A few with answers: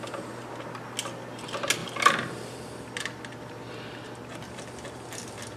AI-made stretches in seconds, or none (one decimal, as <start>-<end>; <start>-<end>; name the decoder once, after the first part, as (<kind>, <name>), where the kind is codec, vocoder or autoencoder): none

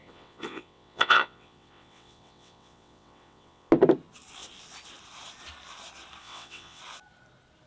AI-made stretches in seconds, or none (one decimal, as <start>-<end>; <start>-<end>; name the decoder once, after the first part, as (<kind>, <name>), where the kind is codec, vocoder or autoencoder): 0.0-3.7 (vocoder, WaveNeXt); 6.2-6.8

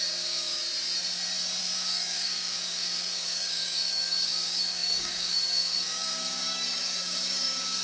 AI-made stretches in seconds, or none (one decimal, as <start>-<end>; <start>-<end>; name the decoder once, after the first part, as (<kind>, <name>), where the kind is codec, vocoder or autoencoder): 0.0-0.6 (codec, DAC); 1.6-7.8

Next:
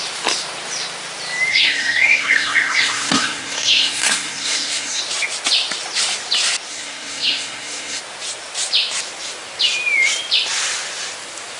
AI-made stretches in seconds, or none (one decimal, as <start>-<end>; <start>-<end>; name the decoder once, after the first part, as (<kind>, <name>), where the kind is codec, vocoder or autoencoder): 1.5-5.0 (codec, SNAC); 6.7-8.0

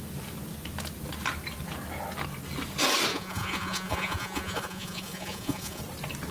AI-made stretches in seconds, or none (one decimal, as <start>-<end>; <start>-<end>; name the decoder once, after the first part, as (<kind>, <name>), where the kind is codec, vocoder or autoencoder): 3.1-5.8 (vocoder, Vocos)

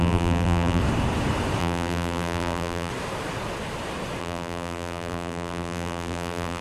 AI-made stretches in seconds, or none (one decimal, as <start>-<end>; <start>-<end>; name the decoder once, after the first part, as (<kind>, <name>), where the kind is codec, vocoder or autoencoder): 0.0-0.8 (vocoder, BigVGAN v2); 1.6-2.9; 4.2-6.6

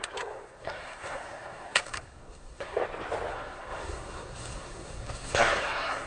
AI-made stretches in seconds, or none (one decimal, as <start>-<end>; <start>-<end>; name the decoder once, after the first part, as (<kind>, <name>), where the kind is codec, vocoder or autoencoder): 0.0-2.8 (codec, SNAC); 3.3-6.1